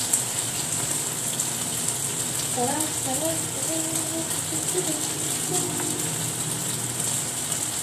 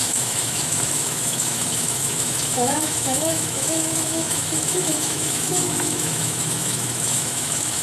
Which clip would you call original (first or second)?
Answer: first